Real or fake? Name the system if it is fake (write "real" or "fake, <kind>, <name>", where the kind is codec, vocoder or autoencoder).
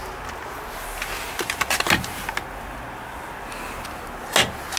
real